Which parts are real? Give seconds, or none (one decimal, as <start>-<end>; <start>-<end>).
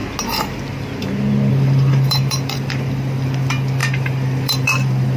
0.0-1.5